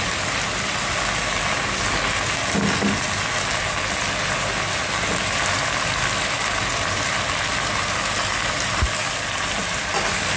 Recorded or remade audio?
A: recorded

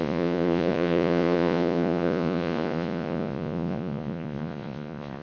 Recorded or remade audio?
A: remade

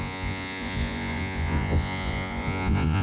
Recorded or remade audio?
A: remade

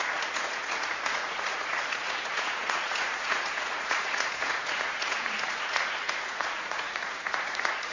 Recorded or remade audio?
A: remade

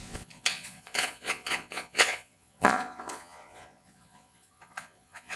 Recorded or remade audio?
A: remade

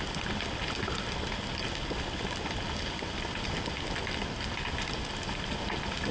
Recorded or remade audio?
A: recorded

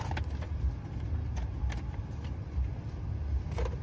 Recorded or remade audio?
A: recorded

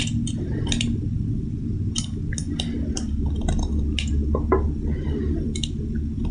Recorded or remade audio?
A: recorded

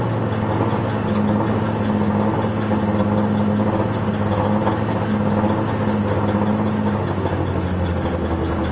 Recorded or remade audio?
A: recorded